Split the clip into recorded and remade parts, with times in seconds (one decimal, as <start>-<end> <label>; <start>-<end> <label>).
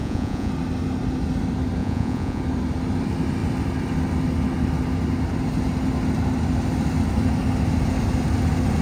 0.0-0.5 remade; 0.5-1.8 recorded; 1.8-2.4 remade; 2.4-8.8 recorded